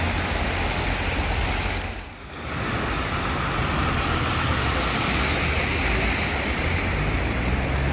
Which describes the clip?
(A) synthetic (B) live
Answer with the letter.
B